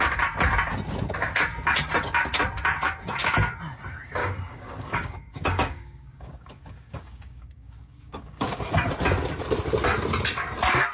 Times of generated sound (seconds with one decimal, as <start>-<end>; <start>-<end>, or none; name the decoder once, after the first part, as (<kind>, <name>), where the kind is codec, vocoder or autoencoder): 4.2-8.9 (codec, DAC)